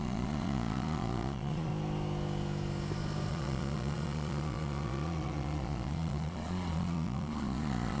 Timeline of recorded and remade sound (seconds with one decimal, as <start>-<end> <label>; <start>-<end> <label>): 0.0-1.7 remade; 1.7-3.3 recorded; 3.3-8.0 remade